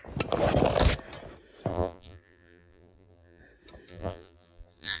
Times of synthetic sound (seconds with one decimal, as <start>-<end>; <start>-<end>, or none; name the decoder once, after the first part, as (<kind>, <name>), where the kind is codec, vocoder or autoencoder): 1.7-3.4 (vocoder, BigVGAN v2); 3.9-5.0